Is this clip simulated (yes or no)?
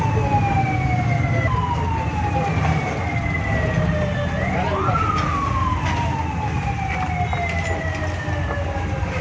no